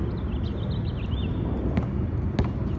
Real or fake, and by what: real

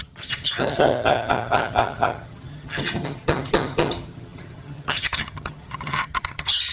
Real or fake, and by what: fake, vocoder, HiFi-GAN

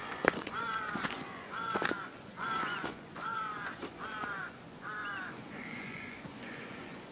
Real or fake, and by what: fake, vocoder, Vocos